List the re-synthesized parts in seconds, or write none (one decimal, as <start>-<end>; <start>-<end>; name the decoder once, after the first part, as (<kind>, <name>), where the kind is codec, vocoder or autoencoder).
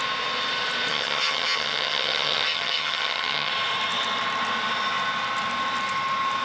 0.9-3.5 (vocoder, HiFi-GAN)